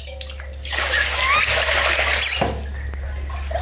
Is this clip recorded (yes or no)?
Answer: yes